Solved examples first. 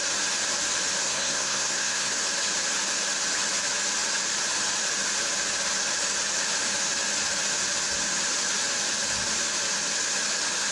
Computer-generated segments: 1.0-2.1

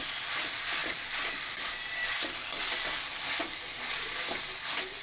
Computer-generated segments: none

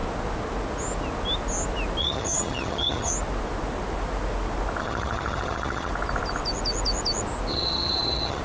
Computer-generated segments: 2.0-3.1; 4.8-5.9; 7.5-8.4

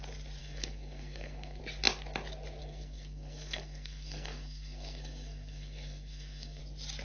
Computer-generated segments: 0.4-1.6; 2.6-6.6

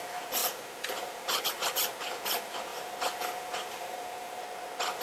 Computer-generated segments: 0.4-1.9; 2.7-4.4

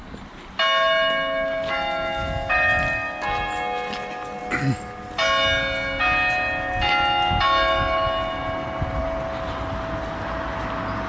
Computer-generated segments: none

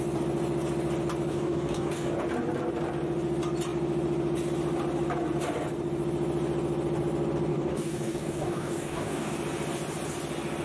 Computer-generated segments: 1.3-2.1; 7.5-9.3